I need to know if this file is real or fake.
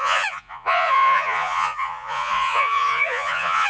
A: fake